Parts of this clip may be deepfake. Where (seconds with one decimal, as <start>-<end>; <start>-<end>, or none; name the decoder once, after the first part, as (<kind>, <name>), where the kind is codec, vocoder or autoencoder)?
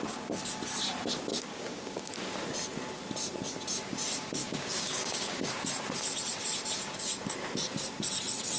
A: 1.3-2.1 (codec, DAC); 4.4-5.5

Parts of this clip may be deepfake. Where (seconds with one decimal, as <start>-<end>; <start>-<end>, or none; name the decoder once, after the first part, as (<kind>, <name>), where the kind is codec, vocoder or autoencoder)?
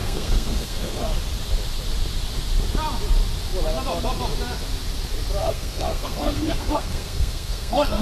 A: 0.0-1.0 (codec, SNAC); 5.4-8.0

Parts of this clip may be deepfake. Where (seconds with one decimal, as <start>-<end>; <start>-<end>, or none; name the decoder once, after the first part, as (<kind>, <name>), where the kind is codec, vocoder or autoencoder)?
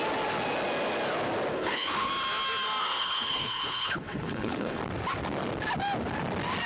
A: 1.5-2.1 (codec, HILCodec); 2.8-4.8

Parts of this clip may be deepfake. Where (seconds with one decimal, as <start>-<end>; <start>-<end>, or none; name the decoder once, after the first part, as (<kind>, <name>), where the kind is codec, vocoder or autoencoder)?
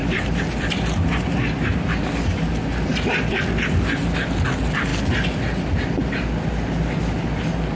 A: 0.0-3.3 (vocoder, BigVGAN v2)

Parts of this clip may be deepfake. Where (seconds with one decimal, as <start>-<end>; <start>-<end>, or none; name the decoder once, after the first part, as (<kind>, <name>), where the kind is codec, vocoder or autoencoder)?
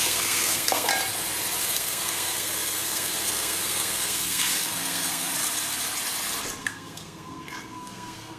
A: 0.0-0.9 (codec, SNAC); 1.6-5.3; 6.6-8.4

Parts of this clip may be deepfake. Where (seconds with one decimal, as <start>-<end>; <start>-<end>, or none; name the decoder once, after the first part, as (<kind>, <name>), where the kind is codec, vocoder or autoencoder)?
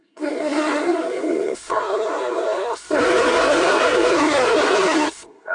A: 0.0-5.5 (codec, SNAC)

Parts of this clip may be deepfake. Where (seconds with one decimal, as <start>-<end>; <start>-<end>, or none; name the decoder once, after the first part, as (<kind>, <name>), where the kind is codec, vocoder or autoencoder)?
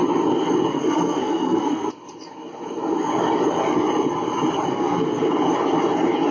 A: 0.7-1.9 (codec, SNAC); 4.7-5.3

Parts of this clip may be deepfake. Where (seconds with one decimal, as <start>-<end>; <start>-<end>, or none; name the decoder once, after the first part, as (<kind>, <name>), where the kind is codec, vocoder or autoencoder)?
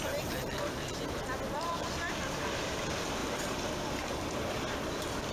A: 0.0-3.2 (vocoder, BigVGAN v2); 4.5-5.3